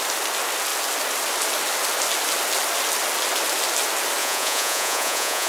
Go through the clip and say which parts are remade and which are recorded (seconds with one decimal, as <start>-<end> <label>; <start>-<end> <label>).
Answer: 0.0-4.2 recorded; 4.2-5.5 remade